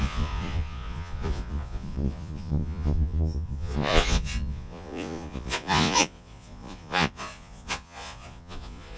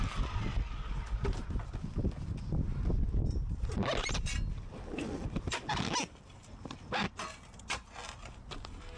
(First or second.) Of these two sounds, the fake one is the first